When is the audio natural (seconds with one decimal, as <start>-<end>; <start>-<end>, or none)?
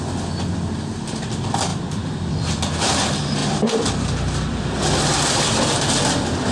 0.0-1.7; 2.5-3.4